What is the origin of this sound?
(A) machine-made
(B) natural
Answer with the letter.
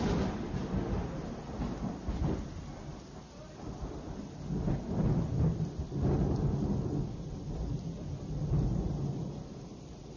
B